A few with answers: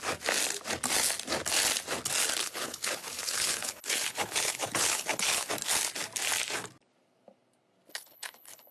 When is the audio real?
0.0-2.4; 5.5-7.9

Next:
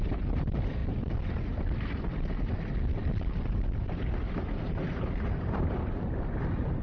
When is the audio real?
0.8-4.6

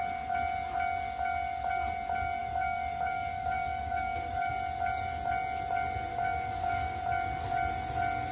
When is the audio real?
0.0-2.4; 4.5-6.1; 7.0-8.3

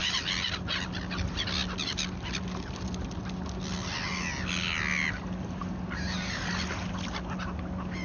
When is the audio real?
0.0-8.0

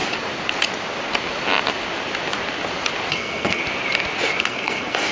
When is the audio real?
0.0-3.1; 3.6-4.4

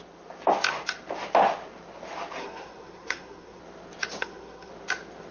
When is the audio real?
0.0-2.4; 3.6-4.2; 4.7-5.3